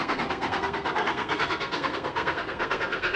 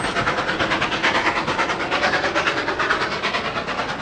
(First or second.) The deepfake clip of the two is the first